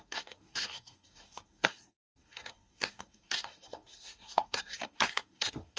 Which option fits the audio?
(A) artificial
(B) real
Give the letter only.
A